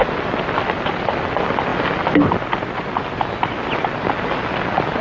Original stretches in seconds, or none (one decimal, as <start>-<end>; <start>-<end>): 0.0-5.0